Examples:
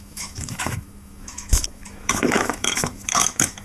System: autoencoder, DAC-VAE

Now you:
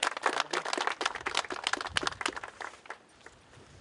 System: none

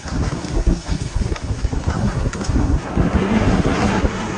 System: codec, SNAC